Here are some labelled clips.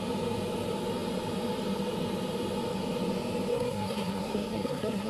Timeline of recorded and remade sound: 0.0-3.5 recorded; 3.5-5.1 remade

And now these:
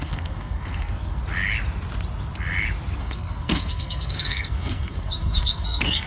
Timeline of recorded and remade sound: 0.0-1.2 remade; 1.2-3.0 recorded; 3.0-6.1 remade